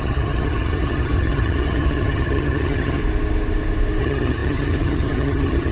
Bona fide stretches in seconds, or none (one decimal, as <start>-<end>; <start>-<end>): 3.0-4.0